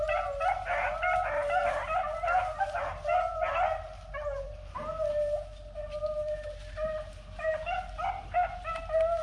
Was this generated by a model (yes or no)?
no